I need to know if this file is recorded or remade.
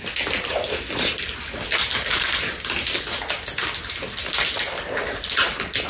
recorded